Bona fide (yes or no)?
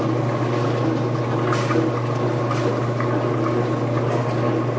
yes